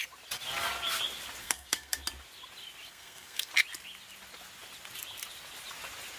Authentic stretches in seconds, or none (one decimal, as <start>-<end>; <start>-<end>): 0.0-1.4; 2.0-2.9; 3.5-6.2